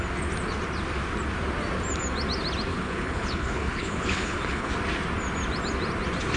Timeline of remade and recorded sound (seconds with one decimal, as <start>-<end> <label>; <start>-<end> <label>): 0.0-2.7 recorded; 2.7-4.7 remade; 4.7-6.4 recorded